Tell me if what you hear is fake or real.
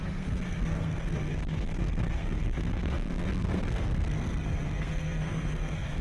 fake